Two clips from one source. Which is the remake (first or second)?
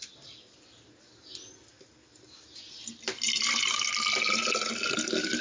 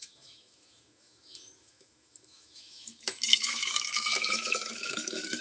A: second